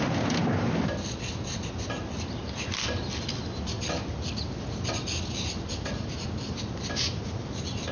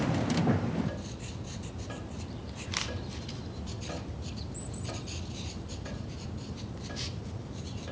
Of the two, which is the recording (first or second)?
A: first